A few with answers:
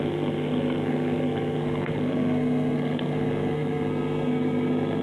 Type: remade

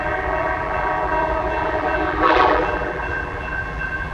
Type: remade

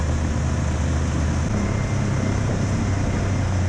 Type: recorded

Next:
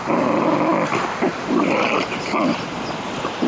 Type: remade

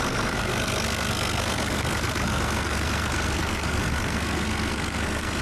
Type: remade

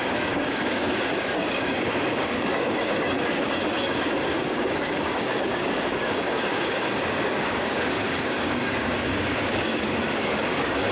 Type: remade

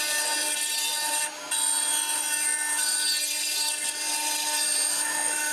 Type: recorded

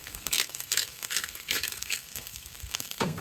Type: remade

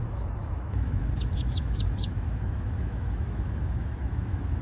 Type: remade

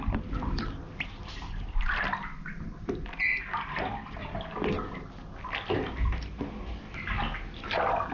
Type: recorded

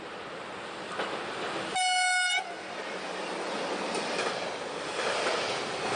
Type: recorded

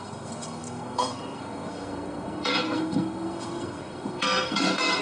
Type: remade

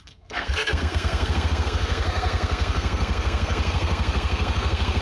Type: remade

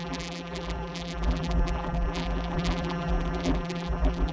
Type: remade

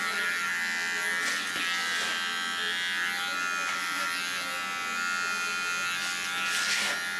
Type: recorded